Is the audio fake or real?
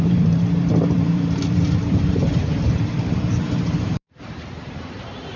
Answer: fake